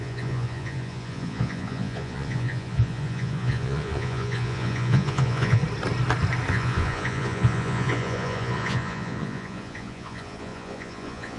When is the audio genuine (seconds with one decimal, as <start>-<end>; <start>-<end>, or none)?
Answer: 5.6-6.5